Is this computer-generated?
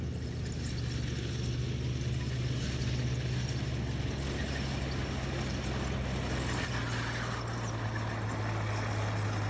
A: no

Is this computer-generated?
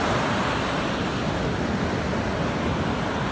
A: no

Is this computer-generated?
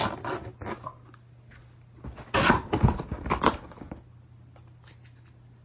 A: no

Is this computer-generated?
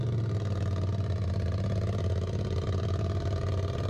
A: no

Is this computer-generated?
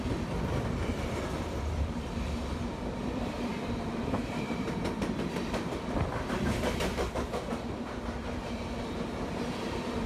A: yes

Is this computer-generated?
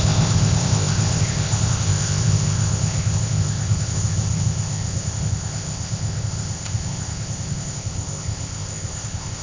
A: yes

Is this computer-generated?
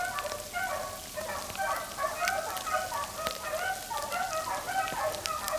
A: no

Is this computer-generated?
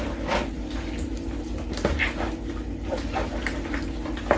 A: no